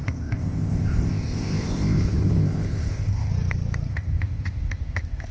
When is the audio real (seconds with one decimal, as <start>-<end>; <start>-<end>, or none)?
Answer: 3.3-3.9